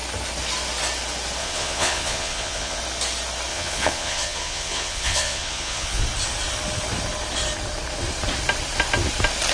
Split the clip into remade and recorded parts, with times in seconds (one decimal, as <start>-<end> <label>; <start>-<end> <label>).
0.0-1.4 recorded; 1.4-2.8 remade; 2.8-3.5 recorded; 3.5-6.0 remade; 6.0-9.5 recorded